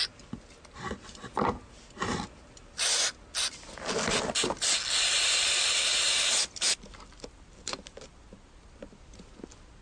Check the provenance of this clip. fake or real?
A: real